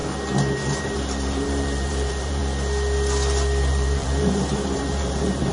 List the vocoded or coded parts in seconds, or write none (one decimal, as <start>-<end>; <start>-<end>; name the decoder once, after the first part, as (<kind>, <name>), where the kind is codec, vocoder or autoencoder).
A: 0.8-2.4 (vocoder, BigVGAN v2); 3.7-5.5